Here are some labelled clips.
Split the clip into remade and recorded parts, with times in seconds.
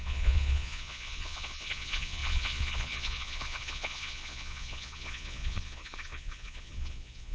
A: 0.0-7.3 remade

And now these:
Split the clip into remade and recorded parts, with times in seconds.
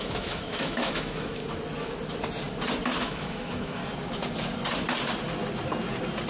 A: 0.0-1.4 remade; 1.4-3.0 recorded; 3.0-3.8 remade; 3.8-6.3 recorded